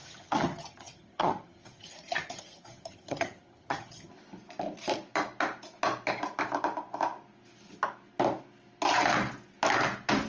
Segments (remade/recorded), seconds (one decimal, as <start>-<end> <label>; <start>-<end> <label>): 0.0-4.1 remade; 4.1-10.3 recorded